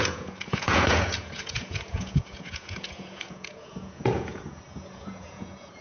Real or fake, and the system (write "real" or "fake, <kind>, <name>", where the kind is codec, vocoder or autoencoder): fake, vocoder, Vocos